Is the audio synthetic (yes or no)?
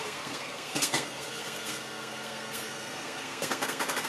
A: yes